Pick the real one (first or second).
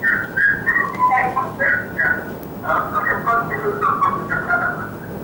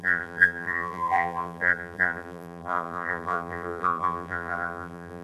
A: first